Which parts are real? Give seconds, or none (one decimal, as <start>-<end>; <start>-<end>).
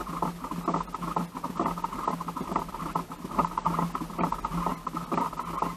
0.0-5.8